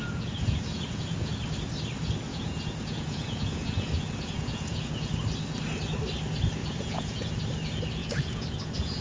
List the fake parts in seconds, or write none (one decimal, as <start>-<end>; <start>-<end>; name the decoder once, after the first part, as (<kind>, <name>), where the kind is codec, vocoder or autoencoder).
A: 0.0-1.3 (vocoder, Vocos); 2.3-5.1; 6.6-7.3; 8.0-9.0